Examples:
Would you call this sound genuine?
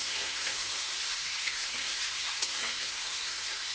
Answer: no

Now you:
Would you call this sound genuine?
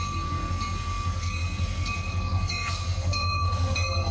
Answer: no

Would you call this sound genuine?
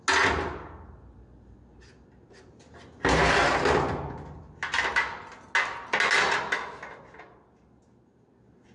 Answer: yes